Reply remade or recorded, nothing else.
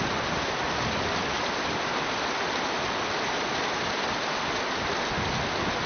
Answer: recorded